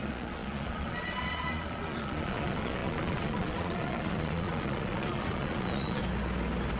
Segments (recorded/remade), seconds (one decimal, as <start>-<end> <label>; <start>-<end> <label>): 0.0-6.0 remade; 6.0-6.8 recorded

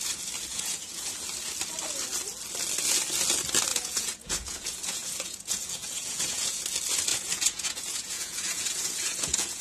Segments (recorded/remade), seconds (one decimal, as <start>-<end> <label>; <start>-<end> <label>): 0.0-0.5 recorded; 0.5-1.1 remade; 1.1-3.7 recorded; 3.7-6.6 remade; 6.6-7.1 recorded; 7.1-9.6 remade

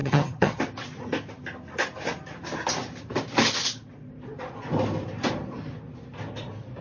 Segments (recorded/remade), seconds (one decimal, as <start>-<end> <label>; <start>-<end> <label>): 0.0-0.6 remade; 0.6-6.8 recorded

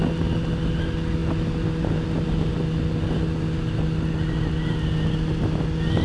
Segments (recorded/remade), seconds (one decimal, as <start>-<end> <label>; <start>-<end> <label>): 0.0-6.0 recorded

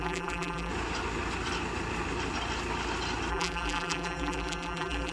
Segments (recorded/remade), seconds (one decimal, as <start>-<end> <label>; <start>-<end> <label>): 0.0-0.7 remade; 0.7-3.3 recorded; 3.3-5.1 remade

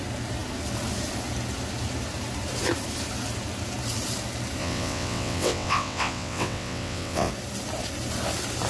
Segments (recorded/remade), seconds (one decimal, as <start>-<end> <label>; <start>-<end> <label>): 0.0-4.6 recorded; 4.6-7.3 remade; 7.3-8.7 recorded